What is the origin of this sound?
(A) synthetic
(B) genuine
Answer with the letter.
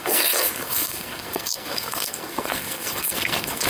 A